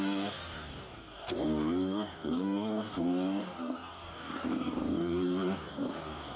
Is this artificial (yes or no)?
yes